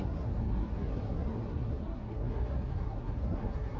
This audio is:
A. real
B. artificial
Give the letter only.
B